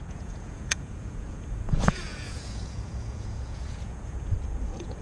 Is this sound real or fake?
fake